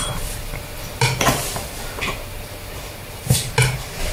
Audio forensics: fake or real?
fake